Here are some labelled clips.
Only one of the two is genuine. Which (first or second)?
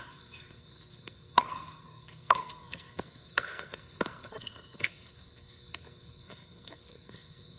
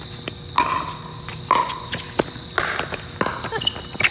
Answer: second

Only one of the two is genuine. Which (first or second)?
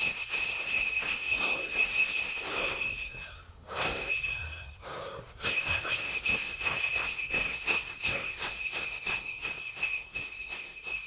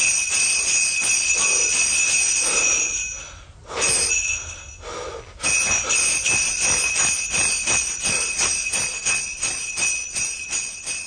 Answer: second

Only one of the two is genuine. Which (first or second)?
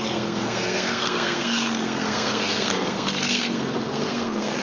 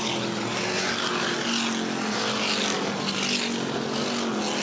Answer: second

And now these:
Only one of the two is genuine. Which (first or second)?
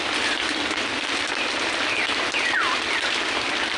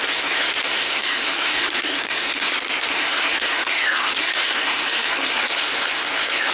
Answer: first